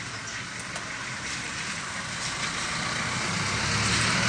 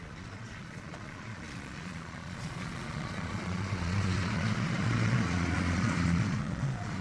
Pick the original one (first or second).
first